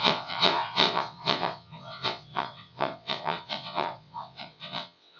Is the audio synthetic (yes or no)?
yes